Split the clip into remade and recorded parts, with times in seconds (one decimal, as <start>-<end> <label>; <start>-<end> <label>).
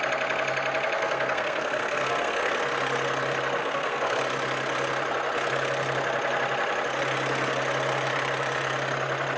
0.0-1.0 recorded; 1.0-2.6 remade; 2.6-3.6 recorded; 3.6-4.2 remade; 4.2-9.4 recorded